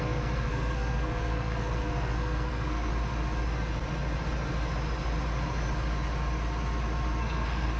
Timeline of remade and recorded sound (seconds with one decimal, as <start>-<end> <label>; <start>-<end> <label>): 0.0-2.9 remade; 2.9-7.2 recorded; 7.2-7.8 remade

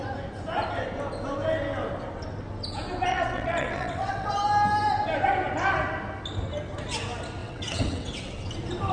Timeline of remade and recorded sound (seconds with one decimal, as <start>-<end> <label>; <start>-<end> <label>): 0.0-3.1 recorded; 3.1-4.3 remade; 4.3-7.4 recorded; 7.4-8.5 remade; 8.5-8.9 recorded

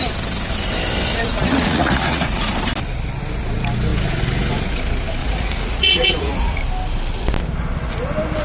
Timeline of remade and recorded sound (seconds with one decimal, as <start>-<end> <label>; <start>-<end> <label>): 0.0-1.3 recorded; 1.3-2.5 remade; 2.5-5.2 recorded; 5.2-6.6 remade; 6.6-8.4 recorded

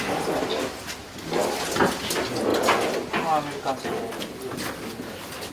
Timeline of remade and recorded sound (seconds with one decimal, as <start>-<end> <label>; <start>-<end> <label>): 0.0-5.5 recorded

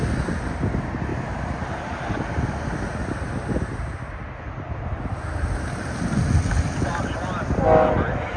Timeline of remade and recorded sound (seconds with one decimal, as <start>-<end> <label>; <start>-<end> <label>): 0.0-1.1 recorded; 1.1-2.0 remade; 2.0-8.4 recorded

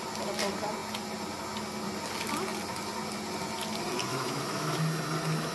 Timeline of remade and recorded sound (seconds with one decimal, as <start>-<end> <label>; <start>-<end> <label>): 0.0-4.1 recorded; 4.1-4.8 remade; 4.8-5.5 recorded

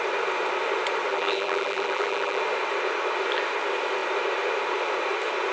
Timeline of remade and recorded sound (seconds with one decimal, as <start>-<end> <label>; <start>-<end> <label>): 0.0-1.1 recorded; 1.1-2.4 remade; 2.4-5.5 recorded

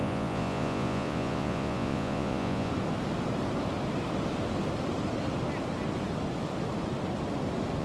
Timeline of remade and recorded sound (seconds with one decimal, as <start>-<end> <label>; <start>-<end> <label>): 0.0-2.7 remade; 2.7-7.8 recorded